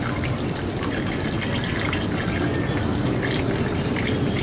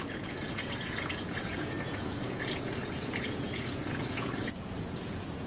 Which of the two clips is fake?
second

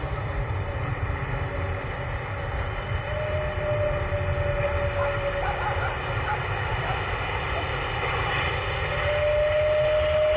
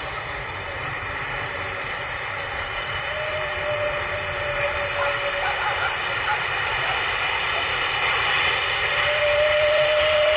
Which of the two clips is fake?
second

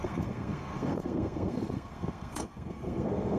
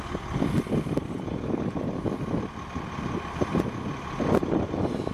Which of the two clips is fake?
first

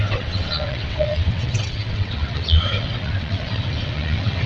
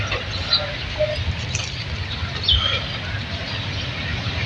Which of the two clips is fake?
first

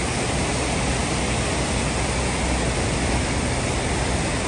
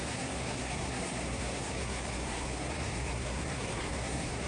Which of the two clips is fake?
second